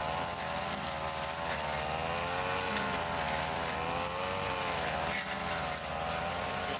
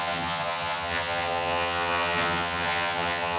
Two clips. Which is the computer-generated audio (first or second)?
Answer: second